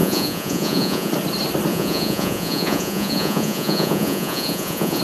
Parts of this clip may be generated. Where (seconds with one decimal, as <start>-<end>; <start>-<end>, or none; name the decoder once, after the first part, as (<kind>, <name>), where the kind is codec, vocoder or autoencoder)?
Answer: 0.0-1.1 (vocoder, Vocos); 1.7-5.0

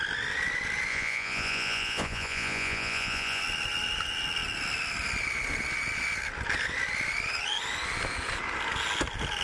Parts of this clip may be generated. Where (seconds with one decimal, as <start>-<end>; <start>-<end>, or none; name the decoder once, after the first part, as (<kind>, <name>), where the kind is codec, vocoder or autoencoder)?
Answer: 0.9-3.4 (vocoder, Vocos)

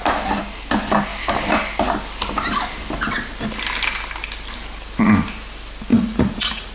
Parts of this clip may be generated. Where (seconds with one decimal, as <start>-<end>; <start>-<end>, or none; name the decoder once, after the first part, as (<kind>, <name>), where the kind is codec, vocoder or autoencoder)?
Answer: 5.9-6.7 (vocoder, Vocos)

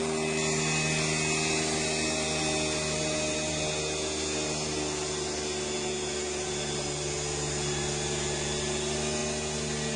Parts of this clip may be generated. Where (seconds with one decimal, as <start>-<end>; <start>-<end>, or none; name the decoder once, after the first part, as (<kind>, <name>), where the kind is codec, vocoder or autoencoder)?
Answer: none

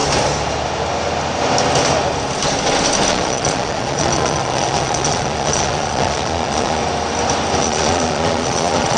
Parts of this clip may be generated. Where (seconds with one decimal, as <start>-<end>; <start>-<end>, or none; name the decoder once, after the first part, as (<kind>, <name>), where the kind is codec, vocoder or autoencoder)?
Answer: 3.1-6.8 (vocoder, Vocos); 7.6-9.0